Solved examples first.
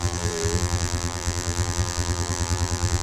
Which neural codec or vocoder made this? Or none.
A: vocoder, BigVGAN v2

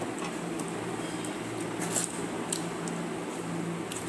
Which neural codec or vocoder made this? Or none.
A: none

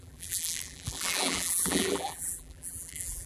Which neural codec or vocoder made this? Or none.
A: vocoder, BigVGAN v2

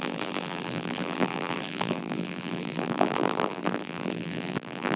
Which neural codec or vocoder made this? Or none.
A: vocoder, BigVGAN v2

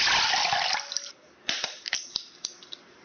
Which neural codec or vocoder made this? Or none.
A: vocoder, BigVGAN v2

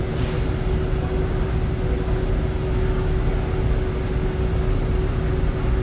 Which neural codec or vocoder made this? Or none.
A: none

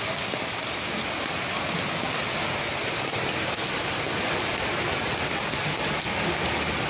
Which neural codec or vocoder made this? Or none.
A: none